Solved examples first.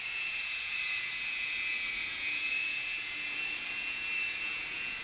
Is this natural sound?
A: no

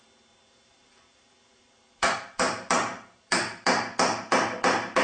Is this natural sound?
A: no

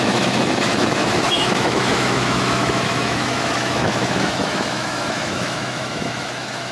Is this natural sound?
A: no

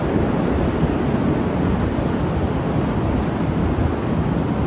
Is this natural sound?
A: yes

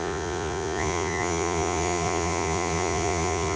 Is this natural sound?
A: no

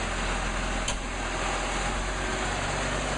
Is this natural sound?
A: yes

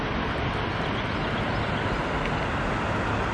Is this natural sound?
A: yes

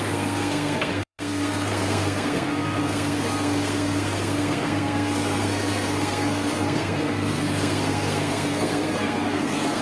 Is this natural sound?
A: no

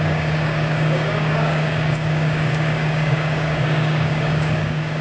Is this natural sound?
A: no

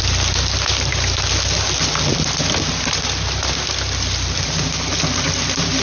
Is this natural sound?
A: yes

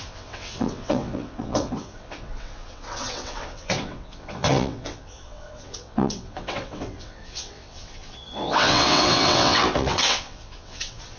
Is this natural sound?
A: no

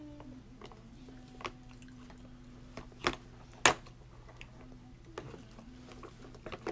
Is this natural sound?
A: yes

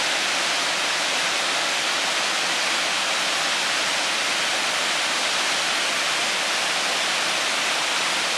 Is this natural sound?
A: yes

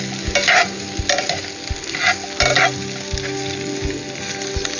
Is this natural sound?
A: yes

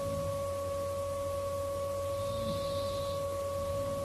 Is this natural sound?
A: yes